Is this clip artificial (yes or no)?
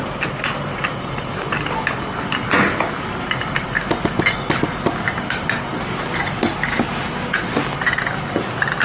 no